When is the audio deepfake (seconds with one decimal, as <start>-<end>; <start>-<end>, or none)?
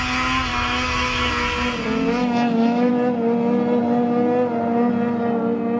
0.5-1.3; 2.2-2.9